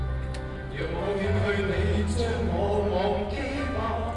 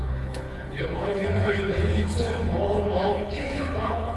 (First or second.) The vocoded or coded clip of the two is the second